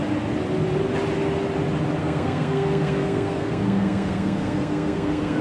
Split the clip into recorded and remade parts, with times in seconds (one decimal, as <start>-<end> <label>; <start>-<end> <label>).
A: 0.0-2.0 recorded; 2.0-5.4 remade